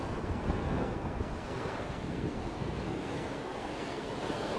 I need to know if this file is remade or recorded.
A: remade